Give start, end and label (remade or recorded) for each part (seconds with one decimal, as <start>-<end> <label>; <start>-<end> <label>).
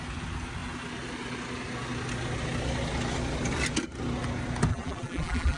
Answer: 0.0-4.7 recorded; 4.7-5.6 remade